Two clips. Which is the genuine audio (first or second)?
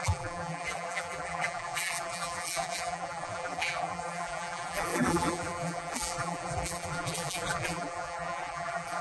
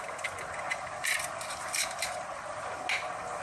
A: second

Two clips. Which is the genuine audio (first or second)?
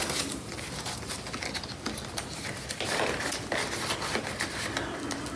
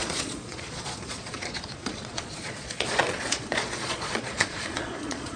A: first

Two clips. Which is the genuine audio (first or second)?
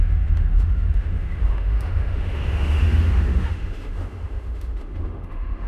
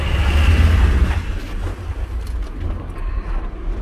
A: second